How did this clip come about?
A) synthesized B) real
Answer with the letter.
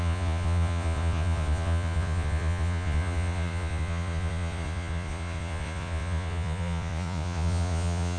A